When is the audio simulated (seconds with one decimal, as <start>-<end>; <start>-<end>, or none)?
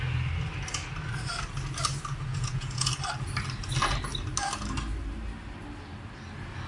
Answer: 2.3-2.9